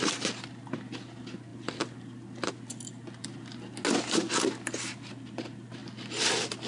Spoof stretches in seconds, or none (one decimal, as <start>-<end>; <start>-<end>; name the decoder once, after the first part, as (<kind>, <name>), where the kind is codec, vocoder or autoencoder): none